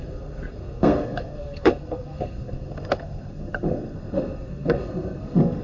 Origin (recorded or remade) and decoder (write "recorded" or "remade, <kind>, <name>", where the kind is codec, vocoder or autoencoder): remade, codec, SNAC